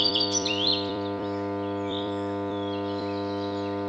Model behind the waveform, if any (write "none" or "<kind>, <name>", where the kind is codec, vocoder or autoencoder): vocoder, BigVGAN v2